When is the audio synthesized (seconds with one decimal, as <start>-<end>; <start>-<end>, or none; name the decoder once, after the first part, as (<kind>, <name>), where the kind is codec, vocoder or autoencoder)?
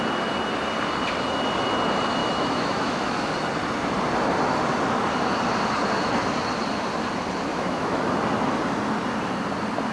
2.2-3.3 (autoencoder, DAC-VAE); 7.5-8.0